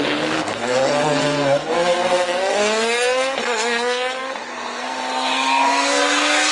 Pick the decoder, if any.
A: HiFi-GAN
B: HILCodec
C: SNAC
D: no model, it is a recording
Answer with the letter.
C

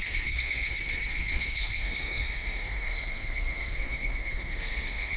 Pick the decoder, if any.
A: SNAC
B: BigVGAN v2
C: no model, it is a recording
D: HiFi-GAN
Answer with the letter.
A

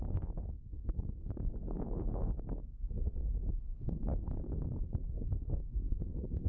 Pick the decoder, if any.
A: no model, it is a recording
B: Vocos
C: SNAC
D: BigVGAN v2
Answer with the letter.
C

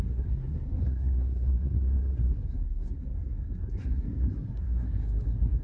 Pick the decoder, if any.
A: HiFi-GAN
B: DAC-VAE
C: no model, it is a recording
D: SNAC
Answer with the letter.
D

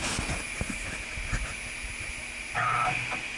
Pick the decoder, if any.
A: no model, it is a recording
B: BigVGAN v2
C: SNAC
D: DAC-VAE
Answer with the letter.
A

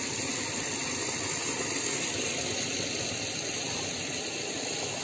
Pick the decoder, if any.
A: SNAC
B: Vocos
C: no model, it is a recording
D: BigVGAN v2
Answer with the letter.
C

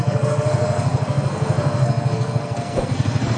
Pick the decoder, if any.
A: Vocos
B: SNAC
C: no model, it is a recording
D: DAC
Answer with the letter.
B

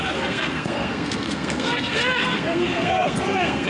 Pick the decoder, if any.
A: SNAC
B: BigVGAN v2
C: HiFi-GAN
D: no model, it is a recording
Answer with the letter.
A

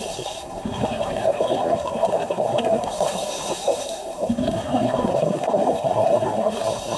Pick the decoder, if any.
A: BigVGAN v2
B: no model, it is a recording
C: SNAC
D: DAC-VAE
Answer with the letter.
C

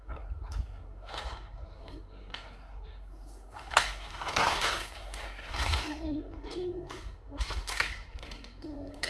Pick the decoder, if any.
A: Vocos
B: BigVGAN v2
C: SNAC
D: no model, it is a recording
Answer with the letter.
C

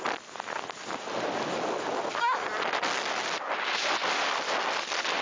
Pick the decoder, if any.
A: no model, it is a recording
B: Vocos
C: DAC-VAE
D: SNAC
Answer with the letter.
A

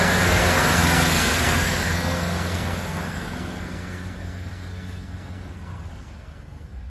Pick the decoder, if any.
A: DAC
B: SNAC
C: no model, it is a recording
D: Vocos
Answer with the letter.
B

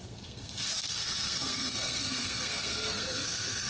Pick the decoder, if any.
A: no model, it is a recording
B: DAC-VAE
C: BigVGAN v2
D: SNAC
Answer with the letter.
D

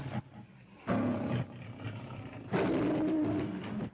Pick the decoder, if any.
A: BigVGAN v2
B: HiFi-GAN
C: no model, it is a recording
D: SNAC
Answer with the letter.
C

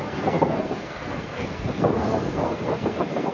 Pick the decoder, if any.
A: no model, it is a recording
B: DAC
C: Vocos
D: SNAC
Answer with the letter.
D